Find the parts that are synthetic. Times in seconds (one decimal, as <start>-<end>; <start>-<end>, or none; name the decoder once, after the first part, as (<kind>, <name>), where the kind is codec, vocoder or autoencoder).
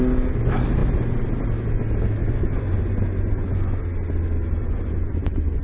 2.2-3.8 (vocoder, Vocos); 4.6-5.6